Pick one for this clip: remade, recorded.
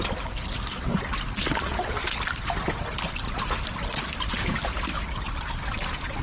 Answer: recorded